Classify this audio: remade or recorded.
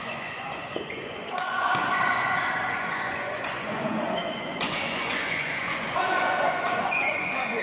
remade